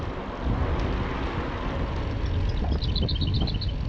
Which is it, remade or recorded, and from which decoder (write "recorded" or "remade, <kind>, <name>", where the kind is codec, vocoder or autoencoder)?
recorded